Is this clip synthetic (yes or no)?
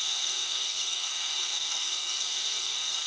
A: yes